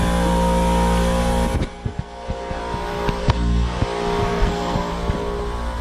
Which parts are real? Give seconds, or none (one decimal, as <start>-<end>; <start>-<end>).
0.0-1.7; 2.6-3.2; 3.8-4.2; 4.9-5.8